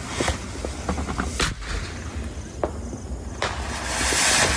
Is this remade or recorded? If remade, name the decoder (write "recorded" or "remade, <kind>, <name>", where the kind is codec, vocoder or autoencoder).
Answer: recorded